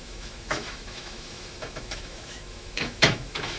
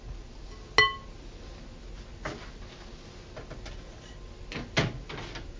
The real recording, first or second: second